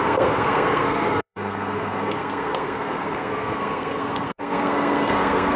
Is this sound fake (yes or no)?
yes